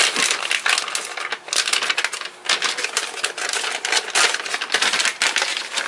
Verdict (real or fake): real